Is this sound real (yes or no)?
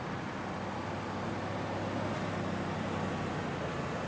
yes